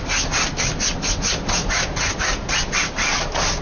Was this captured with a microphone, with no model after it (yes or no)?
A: yes